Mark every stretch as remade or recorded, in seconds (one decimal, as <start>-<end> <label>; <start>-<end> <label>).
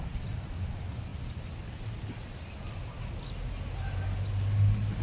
0.0-5.0 recorded